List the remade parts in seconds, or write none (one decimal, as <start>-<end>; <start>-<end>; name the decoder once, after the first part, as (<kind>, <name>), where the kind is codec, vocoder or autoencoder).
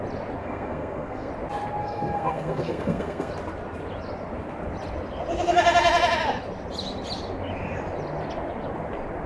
0.4-1.3 (codec, SNAC); 1.8-3.3